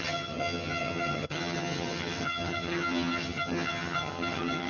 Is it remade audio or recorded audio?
remade